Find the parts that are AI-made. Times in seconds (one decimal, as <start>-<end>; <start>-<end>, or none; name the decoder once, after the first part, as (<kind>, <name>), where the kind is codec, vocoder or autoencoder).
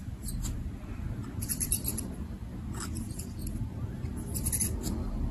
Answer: none